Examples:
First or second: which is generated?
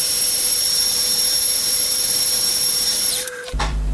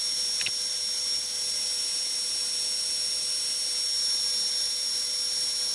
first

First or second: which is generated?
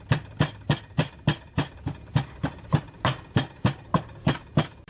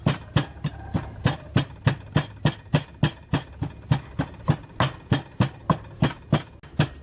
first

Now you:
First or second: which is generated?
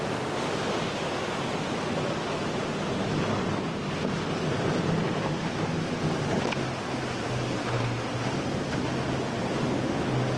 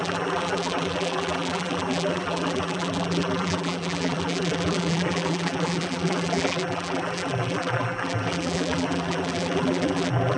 second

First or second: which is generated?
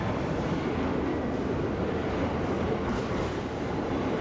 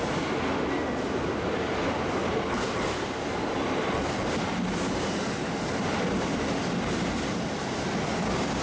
first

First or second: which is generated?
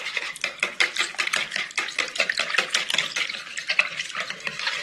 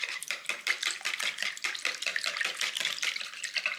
first